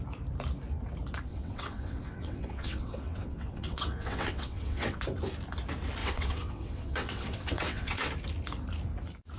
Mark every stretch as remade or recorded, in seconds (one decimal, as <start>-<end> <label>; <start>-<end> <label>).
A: 0.0-1.3 recorded; 1.3-5.0 remade; 5.0-6.0 recorded; 6.0-8.1 remade; 8.1-9.4 recorded